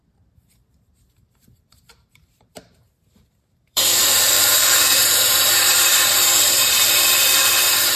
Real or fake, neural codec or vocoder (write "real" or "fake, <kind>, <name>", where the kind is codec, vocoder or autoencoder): fake, vocoder, BigVGAN v2